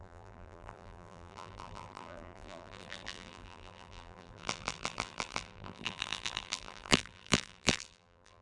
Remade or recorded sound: remade